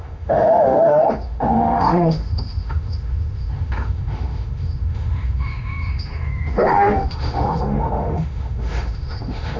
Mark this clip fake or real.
fake